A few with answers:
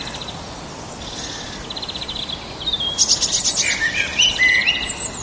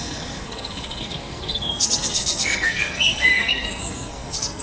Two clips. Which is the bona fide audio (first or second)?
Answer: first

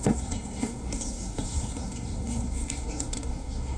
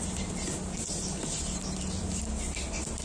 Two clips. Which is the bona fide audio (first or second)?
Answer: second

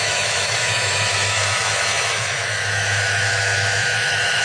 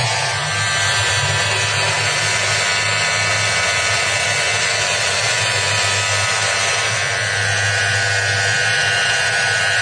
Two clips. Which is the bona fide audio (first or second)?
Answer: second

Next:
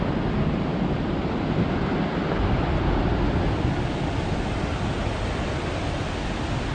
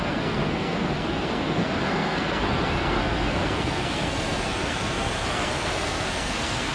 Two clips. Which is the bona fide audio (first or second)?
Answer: first